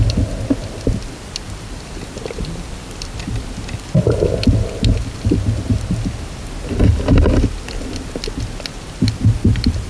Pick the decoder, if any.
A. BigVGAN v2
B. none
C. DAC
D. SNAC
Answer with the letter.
B